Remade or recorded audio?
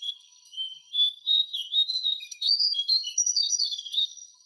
remade